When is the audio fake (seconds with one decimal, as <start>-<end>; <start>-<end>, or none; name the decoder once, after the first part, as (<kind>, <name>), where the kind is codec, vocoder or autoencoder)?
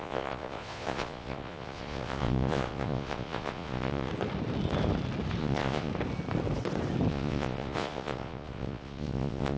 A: 0.0-4.1 (vocoder, Vocos); 5.4-5.9; 7.1-9.6